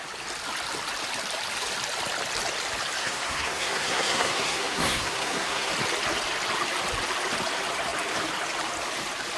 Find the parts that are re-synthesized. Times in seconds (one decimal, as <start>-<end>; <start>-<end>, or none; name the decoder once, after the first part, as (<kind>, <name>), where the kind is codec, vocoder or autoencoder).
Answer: 3.0-5.7 (codec, SNAC)